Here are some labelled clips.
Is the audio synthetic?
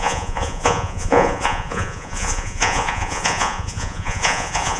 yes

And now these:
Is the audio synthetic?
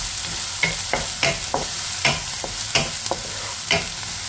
no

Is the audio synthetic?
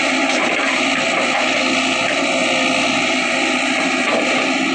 no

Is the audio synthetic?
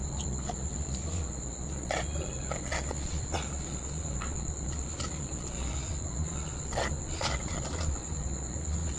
yes